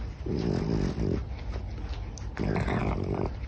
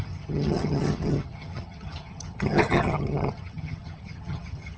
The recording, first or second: first